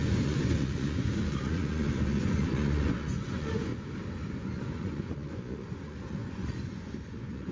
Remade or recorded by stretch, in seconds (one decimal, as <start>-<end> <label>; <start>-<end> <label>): 0.0-3.7 remade; 3.7-4.3 recorded; 4.3-7.5 remade